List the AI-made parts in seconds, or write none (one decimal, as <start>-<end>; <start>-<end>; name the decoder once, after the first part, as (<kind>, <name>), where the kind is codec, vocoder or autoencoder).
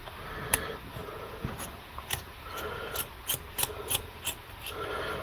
1.0-3.1 (vocoder, Vocos); 3.5-4.2